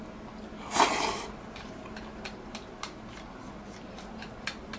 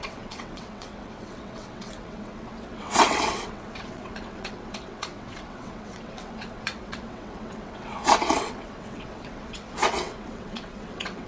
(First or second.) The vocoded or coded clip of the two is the second